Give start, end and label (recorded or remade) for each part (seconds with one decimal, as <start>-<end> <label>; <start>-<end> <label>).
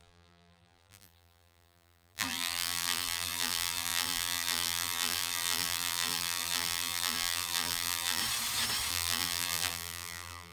0.0-8.2 remade; 8.2-8.9 recorded; 8.9-10.5 remade